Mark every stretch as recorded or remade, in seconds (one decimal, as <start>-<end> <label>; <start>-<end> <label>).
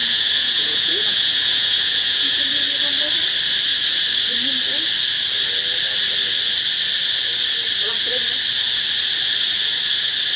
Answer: 0.0-2.4 remade; 2.4-10.4 recorded